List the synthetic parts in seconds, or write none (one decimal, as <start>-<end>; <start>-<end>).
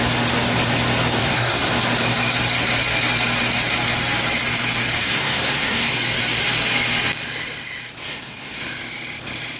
1.2-1.7; 5.0-5.9; 8.0-8.6